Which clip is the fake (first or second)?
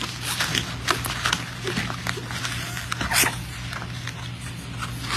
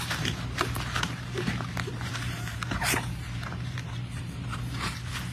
second